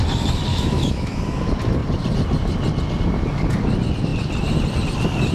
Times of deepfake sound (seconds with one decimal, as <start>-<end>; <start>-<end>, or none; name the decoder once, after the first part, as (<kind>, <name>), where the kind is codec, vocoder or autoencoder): 0.5-1.2 (autoencoder, DAC-VAE)